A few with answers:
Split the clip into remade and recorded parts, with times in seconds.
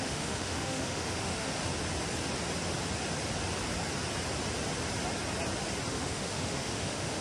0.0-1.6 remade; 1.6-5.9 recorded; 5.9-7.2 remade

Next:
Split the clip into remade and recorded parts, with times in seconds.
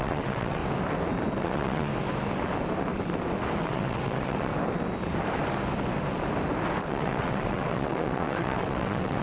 0.0-0.6 remade; 0.6-1.4 recorded; 1.4-1.9 remade; 1.9-3.6 recorded; 3.6-4.5 remade; 4.5-6.8 recorded; 6.8-9.2 remade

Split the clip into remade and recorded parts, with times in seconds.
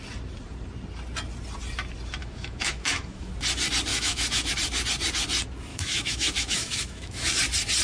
0.0-2.2 recorded; 2.2-3.3 remade; 3.3-3.9 recorded; 3.9-4.5 remade; 4.5-5.7 recorded; 5.7-7.3 remade; 7.3-7.8 recorded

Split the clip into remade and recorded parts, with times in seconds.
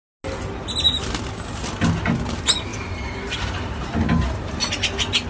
0.0-2.7 recorded; 2.7-4.6 remade; 4.6-5.3 recorded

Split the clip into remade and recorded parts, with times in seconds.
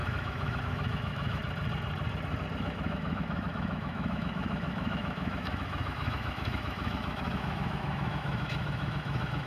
0.0-1.4 remade; 1.4-2.6 recorded; 2.6-9.5 remade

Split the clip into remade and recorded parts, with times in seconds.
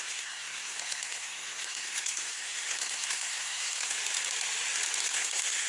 0.0-4.0 remade; 4.0-5.0 recorded; 5.0-5.7 remade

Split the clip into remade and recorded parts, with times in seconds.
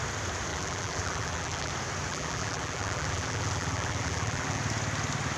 0.0-0.5 recorded; 0.5-1.7 remade; 1.7-2.1 recorded; 2.1-4.6 remade; 4.6-5.4 recorded